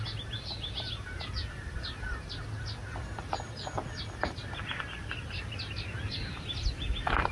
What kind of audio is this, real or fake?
real